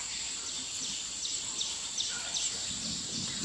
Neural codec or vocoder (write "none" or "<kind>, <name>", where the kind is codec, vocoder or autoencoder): none